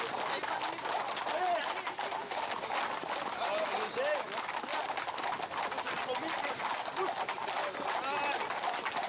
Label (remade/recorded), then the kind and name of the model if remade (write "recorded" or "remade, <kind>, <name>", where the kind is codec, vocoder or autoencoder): recorded